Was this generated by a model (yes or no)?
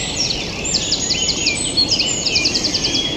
yes